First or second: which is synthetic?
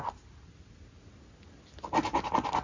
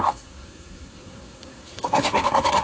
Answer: second